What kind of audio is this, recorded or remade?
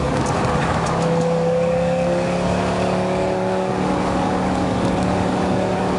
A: remade